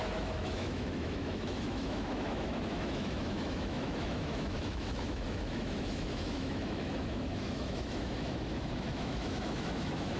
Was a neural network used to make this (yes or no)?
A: yes